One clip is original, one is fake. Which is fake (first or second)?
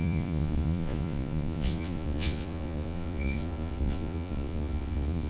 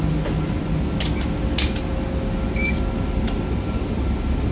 first